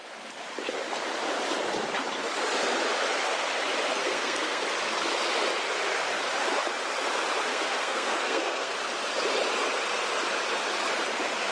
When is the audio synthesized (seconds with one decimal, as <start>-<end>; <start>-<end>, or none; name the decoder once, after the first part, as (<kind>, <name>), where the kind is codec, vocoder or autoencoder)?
4.0-4.6 (codec, SNAC); 7.5-8.7